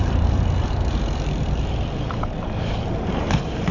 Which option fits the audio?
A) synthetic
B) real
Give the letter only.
A